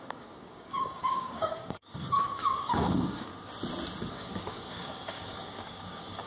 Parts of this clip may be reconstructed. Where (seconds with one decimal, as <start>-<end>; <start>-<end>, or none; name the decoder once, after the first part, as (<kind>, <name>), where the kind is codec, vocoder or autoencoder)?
0.0-3.3 (codec, DAC); 4.1-6.3